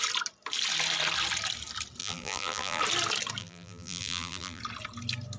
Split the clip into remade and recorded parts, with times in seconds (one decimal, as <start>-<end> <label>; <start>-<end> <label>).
0.0-2.0 recorded; 2.0-2.8 remade; 2.8-3.4 recorded; 3.4-4.6 remade; 4.6-5.4 recorded

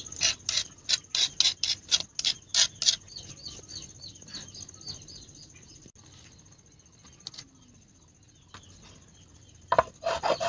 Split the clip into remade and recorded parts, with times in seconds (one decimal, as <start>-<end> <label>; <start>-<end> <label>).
0.0-10.5 recorded

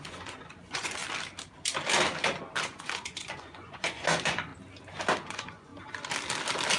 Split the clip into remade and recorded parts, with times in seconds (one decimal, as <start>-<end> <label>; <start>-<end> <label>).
0.0-1.0 remade; 1.0-2.6 recorded; 2.6-4.5 remade; 4.5-5.3 recorded; 5.3-5.7 remade; 5.7-6.8 recorded